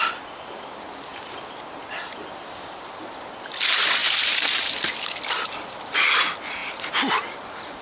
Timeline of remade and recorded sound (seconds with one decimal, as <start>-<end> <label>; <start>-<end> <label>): 0.0-7.8 recorded